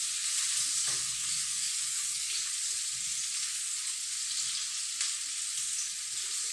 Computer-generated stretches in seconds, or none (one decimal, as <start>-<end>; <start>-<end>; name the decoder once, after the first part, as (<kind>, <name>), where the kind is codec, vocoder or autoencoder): 1.0-2.6 (codec, DAC)